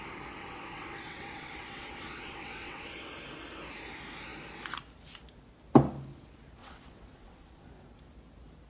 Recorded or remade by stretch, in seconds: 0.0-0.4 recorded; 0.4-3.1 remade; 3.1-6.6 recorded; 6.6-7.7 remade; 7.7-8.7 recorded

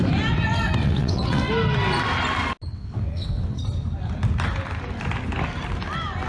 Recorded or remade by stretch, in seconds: 0.0-0.8 recorded; 0.8-1.5 remade; 1.5-2.7 recorded; 2.7-3.6 remade; 3.6-6.3 recorded

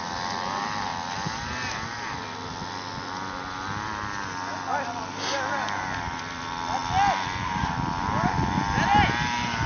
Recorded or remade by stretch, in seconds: 0.0-9.7 recorded

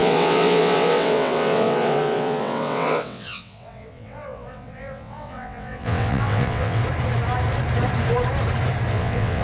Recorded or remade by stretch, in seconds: 0.0-6.8 remade; 6.8-8.9 recorded; 8.9-9.4 remade

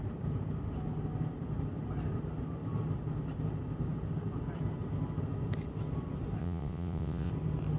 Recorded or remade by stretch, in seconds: 0.0-6.4 recorded; 6.4-7.3 remade; 7.3-7.8 recorded

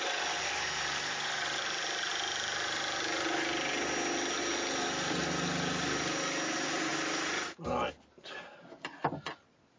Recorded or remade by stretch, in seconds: 0.0-9.8 recorded

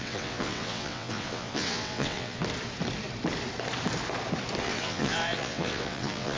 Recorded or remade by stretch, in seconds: 0.0-2.4 remade; 2.4-4.6 recorded; 4.6-6.4 remade